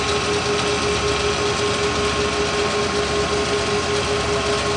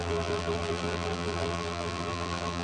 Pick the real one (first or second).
first